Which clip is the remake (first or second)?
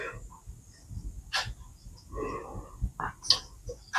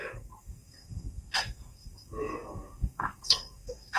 second